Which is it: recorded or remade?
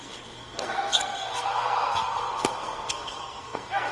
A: remade